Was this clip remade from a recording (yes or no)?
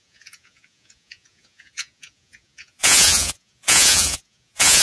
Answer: yes